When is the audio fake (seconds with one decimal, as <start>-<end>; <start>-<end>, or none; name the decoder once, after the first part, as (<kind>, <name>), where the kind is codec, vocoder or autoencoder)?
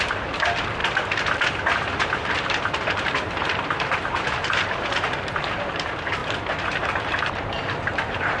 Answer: 0.0-0.8 (vocoder, BigVGAN v2); 1.5-6.2; 6.7-8.4